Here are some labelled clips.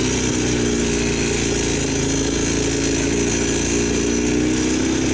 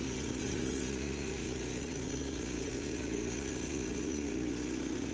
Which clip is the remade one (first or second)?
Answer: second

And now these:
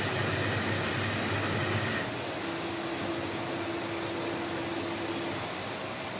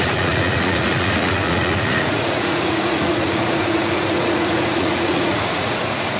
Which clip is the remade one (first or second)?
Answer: second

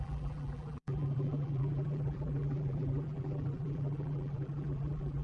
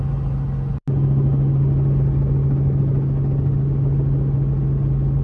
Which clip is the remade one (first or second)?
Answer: first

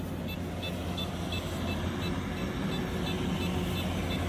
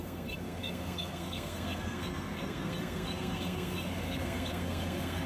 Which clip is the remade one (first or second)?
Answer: second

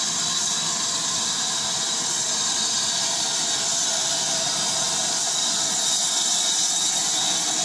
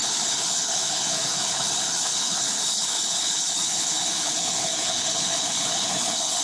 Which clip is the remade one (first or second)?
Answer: second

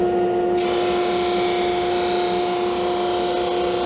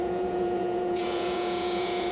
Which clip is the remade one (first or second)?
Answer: second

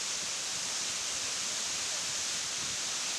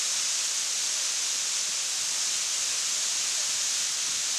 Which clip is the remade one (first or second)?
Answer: first